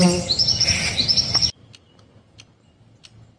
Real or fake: real